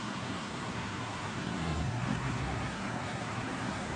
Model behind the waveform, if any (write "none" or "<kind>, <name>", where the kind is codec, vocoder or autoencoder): codec, SNAC